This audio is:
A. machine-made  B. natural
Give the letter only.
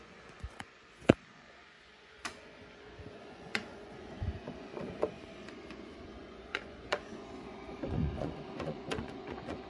A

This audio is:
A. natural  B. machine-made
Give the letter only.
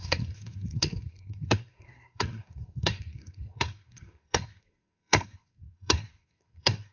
B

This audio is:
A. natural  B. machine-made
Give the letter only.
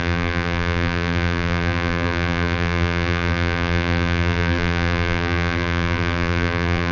B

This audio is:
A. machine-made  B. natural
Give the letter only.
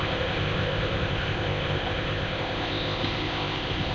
A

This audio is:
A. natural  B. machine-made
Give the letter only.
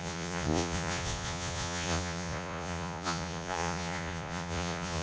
B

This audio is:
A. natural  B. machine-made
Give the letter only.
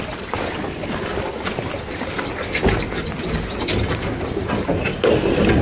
A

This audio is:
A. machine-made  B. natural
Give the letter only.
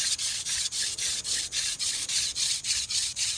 A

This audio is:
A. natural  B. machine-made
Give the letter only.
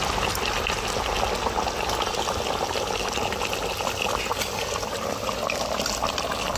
A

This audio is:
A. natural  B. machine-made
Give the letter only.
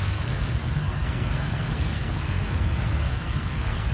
B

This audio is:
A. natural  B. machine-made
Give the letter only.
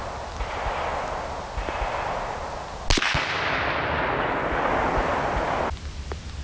A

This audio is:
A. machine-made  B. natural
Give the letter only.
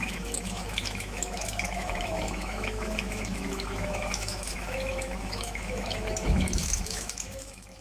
A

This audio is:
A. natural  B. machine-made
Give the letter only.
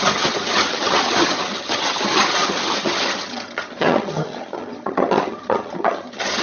B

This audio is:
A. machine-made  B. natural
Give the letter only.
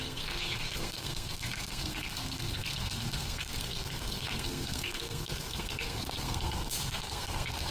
A